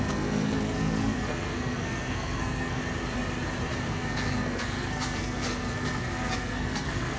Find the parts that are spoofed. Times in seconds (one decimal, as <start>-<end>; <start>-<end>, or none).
0.0-2.8; 3.8-7.2